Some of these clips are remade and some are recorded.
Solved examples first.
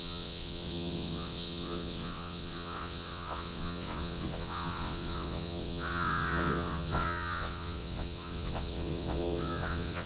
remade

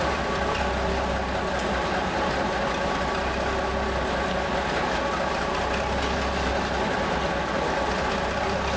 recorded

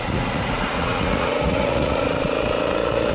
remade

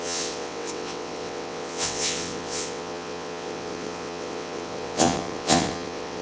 remade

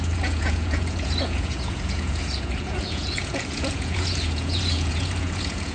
remade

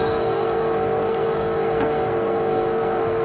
remade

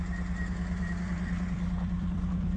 remade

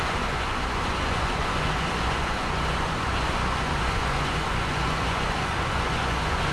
remade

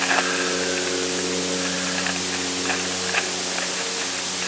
recorded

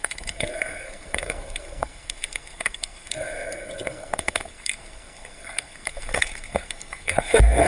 remade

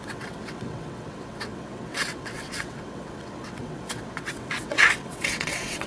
remade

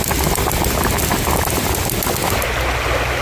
recorded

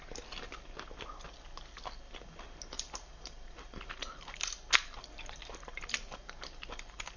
recorded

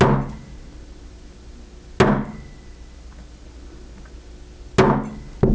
recorded